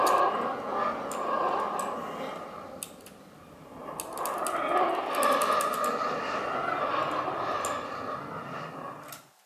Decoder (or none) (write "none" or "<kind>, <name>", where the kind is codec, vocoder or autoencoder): none